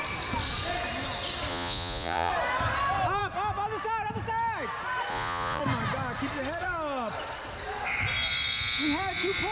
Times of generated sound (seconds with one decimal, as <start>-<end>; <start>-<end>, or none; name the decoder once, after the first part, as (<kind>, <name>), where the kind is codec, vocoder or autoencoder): 1.5-2.3 (vocoder, Vocos); 5.1-5.6